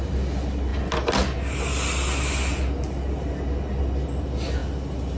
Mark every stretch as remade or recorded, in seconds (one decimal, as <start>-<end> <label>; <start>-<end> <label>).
0.0-5.2 recorded